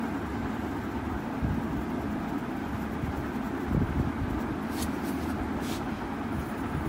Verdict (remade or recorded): recorded